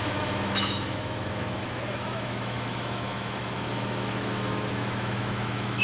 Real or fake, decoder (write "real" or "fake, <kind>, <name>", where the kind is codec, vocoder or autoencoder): fake, autoencoder, DAC-VAE